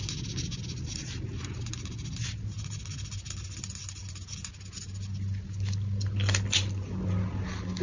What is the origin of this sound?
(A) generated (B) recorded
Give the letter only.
B